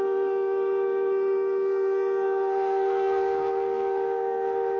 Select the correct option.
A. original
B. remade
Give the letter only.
B